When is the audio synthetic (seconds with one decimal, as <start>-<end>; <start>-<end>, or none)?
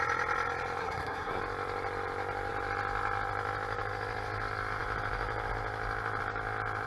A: 0.8-1.4